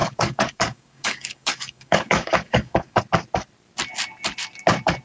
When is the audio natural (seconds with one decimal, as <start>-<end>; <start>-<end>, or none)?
3.0-5.0